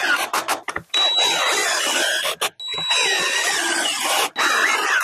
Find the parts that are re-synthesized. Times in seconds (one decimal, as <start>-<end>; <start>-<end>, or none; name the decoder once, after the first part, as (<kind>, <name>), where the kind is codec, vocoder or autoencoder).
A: none